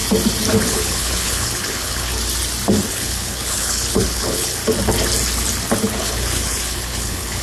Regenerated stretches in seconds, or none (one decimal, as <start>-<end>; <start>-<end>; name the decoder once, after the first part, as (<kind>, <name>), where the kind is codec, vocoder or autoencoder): 0.6-2.1 (codec, HILCodec); 2.9-4.6; 6.0-7.4